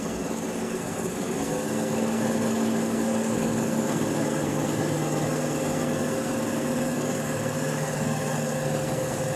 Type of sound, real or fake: fake